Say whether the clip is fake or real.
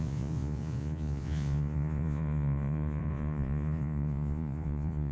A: fake